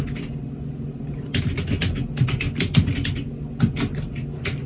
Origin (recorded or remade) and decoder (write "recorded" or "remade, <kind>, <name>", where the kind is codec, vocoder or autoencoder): recorded